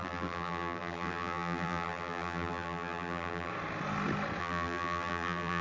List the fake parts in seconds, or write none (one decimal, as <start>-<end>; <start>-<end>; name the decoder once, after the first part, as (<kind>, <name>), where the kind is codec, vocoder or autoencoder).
0.0-3.5 (vocoder, BigVGAN v2); 4.4-5.6